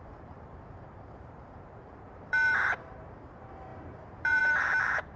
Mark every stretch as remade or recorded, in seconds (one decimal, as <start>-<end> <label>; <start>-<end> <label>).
0.0-5.2 remade